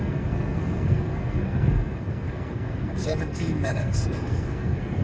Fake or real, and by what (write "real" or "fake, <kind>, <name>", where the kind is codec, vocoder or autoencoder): fake, codec, SNAC